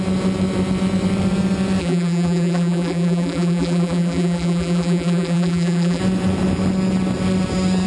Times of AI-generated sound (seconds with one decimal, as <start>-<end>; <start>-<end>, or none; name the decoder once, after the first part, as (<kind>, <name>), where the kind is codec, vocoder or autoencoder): 1.8-6.0 (vocoder, BigVGAN v2)